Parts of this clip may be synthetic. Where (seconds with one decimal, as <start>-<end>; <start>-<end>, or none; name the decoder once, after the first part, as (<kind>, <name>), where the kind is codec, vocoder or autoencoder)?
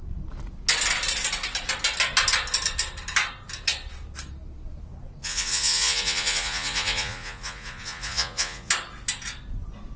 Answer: 5.2-8.7 (vocoder, Vocos)